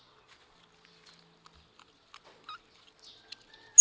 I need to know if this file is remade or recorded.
recorded